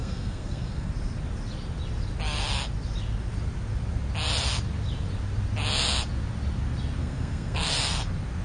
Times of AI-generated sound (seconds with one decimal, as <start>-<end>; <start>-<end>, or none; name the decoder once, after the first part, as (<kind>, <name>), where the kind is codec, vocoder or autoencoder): 0.0-0.9 (codec, SNAC); 7.0-7.7